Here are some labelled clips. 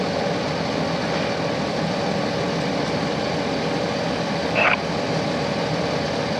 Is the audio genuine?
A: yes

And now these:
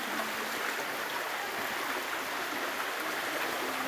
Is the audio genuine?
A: yes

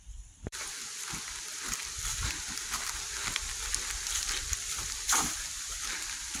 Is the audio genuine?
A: no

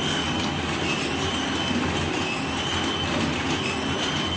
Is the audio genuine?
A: yes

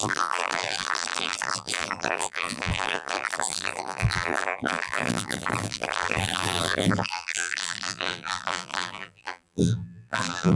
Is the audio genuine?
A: no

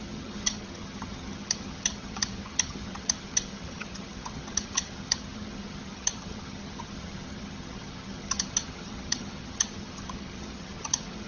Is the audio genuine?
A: no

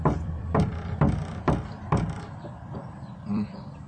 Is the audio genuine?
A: no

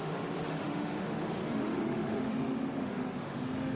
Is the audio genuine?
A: no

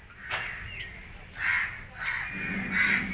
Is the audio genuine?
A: yes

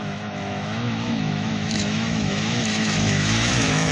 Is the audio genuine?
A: no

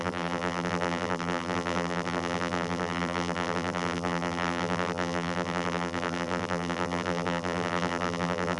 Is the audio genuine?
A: no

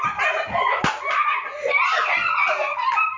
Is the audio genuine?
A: yes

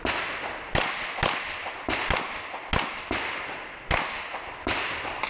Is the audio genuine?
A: yes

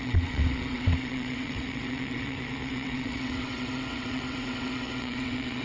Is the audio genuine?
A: no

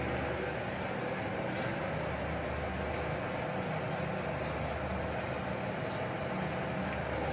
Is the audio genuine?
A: yes